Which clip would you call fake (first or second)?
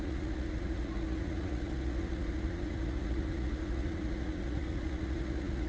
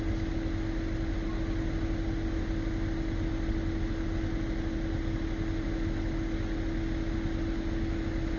first